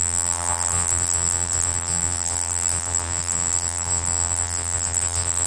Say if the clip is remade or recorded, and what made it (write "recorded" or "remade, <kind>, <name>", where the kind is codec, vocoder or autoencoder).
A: remade, vocoder, BigVGAN v2